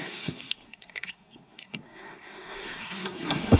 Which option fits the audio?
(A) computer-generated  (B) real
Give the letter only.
A